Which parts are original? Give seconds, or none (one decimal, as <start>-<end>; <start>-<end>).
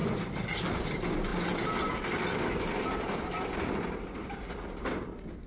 0.0-0.6; 1.3-4.6